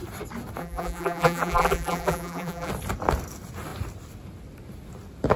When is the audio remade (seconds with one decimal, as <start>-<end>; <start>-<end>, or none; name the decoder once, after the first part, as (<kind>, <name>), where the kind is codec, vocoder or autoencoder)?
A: 0.6-2.7 (vocoder, BigVGAN v2)